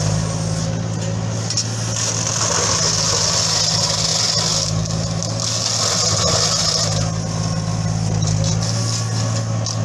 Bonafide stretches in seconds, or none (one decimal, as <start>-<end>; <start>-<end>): 0.0-9.8